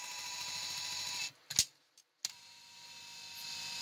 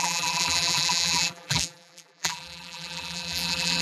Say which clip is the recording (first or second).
first